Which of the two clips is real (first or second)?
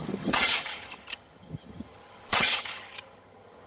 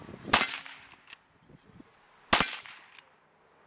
second